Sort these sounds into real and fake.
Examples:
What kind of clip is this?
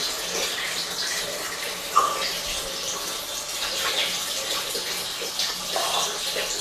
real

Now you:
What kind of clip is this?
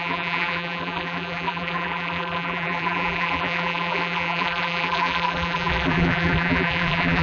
fake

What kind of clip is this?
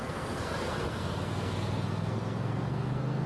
fake